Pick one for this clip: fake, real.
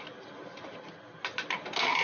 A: real